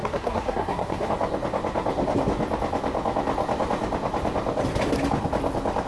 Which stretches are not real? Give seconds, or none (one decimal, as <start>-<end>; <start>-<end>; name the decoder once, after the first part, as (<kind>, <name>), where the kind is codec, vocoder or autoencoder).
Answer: 0.0-1.1 (codec, SNAC)